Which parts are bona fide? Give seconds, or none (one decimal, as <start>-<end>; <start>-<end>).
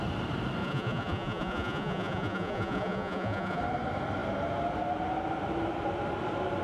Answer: 0.0-0.6; 3.6-6.6